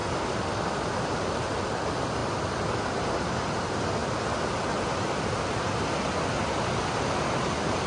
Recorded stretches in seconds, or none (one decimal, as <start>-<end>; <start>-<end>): 0.0-7.9